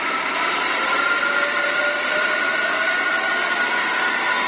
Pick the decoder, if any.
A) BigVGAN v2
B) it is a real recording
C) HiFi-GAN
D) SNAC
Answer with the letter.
A